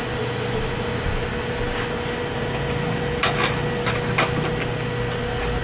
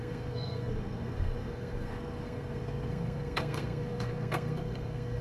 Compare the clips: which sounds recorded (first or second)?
first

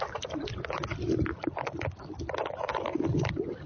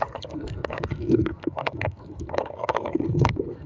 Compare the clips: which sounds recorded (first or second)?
first